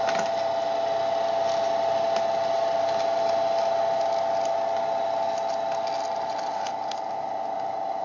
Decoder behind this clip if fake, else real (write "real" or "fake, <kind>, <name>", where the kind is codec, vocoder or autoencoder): real